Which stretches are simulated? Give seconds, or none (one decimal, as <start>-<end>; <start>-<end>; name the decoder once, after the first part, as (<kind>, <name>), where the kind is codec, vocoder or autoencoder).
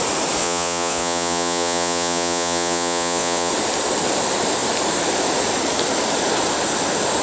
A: 0.4-3.5 (vocoder, Vocos)